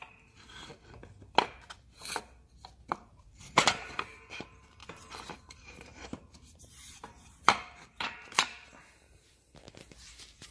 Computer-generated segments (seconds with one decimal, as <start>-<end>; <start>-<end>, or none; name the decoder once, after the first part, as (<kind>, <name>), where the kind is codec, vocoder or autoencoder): 0.0-0.7 (vocoder, BigVGAN v2); 3.1-4.8; 5.3-10.5